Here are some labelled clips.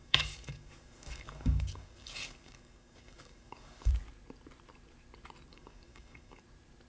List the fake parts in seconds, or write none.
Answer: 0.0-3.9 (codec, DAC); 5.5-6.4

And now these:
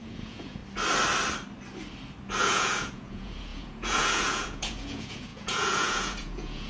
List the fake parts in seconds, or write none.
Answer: 0.0-0.6 (vocoder, Vocos); 2.4-6.7